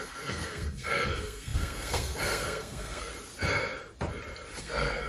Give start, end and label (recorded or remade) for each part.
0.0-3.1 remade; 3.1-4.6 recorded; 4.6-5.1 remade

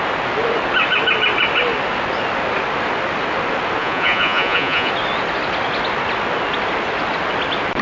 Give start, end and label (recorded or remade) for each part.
0.0-3.8 recorded; 3.8-4.9 remade; 4.9-7.8 recorded

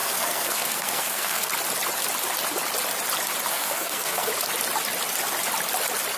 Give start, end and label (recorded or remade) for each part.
0.0-1.5 remade; 1.5-3.5 recorded; 3.5-4.3 remade; 4.3-6.2 recorded

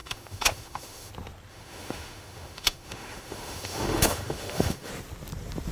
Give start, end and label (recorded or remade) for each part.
0.0-1.1 remade; 1.1-1.5 recorded; 1.5-4.9 remade; 4.9-5.7 recorded

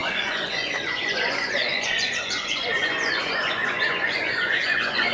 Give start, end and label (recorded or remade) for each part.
0.0-5.1 remade

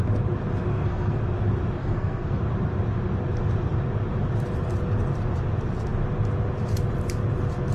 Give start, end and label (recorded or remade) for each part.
0.0-0.7 recorded; 0.7-1.2 remade; 1.2-1.8 recorded; 1.8-2.4 remade; 2.4-7.7 recorded